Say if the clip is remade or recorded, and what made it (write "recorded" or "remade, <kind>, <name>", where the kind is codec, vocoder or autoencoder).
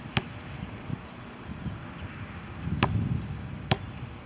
recorded